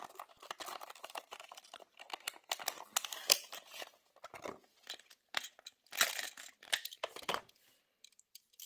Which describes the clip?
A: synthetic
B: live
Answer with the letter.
B